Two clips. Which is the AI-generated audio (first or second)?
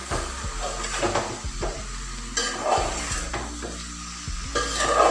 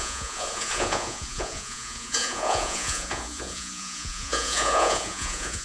second